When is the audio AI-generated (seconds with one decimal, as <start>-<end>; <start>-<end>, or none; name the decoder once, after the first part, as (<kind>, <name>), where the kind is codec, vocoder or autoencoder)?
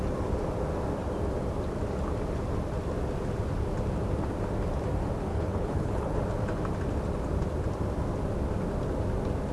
5.3-6.2 (codec, HILCodec)